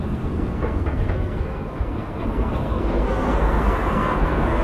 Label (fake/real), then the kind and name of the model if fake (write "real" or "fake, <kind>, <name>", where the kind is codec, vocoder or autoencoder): fake, codec, SNAC